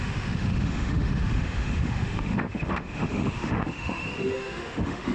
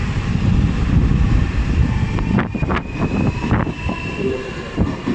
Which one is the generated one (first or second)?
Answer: first